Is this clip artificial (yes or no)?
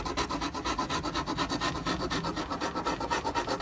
no